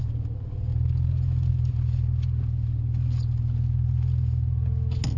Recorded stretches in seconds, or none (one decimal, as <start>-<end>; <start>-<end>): 0.0-5.2